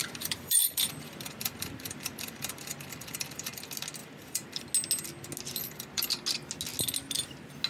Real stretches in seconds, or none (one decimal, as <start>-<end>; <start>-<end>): 3.5-4.0; 4.6-5.6; 6.1-7.7